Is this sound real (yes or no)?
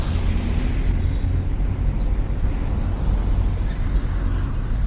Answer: yes